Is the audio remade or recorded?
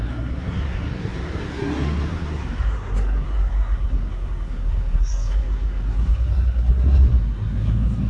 remade